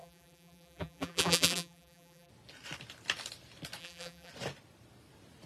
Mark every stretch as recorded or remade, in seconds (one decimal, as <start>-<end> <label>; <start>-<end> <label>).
0.0-2.3 remade; 2.3-3.8 recorded; 3.8-4.3 remade; 4.3-5.5 recorded